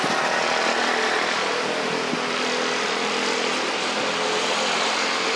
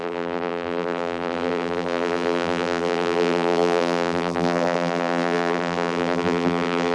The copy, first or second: second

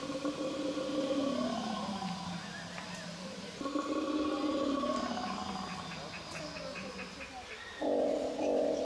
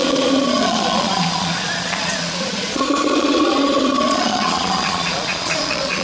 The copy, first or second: second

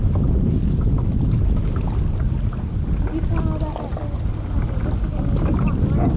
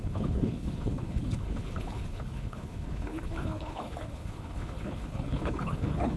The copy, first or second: second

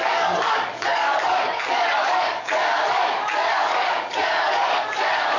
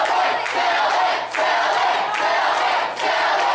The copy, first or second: first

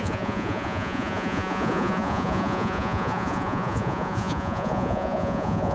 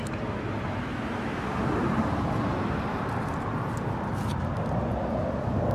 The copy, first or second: first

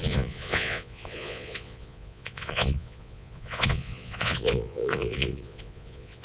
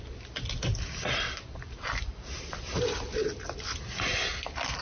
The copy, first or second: first